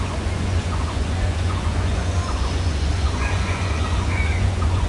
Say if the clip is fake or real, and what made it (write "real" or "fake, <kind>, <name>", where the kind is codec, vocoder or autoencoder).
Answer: fake, vocoder, Vocos